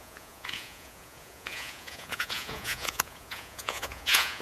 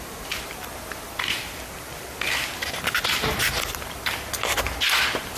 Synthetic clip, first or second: first